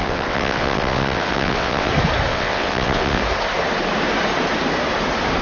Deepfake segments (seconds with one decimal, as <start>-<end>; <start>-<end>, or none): 0.0-1.9; 2.3-3.2

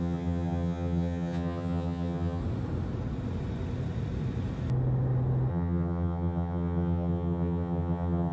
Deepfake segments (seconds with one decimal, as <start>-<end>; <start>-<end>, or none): 0.0-2.4; 5.5-8.3

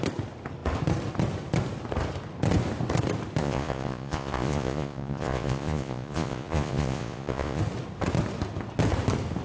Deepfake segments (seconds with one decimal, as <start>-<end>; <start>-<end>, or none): 3.4-7.6